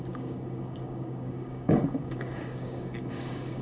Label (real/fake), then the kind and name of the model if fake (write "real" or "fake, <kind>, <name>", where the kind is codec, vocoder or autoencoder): fake, codec, DAC